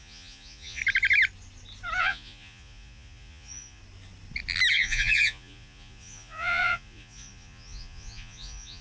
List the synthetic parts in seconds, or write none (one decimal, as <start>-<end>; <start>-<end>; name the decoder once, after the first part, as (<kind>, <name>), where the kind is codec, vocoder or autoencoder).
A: 0.0-0.8 (vocoder, Vocos); 2.0-3.8; 4.7-8.8